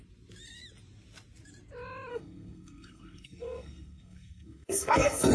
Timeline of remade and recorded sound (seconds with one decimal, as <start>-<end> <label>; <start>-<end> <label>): 0.0-2.1 recorded; 2.1-5.3 remade

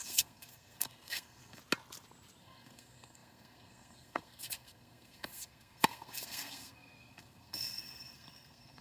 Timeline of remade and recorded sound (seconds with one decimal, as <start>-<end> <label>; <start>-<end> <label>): 0.0-1.6 remade; 1.6-2.4 recorded; 2.4-8.8 remade

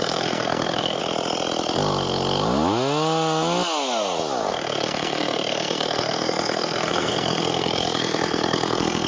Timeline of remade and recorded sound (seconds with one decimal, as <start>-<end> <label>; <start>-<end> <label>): 0.0-1.0 remade; 1.0-4.5 recorded; 4.5-9.1 remade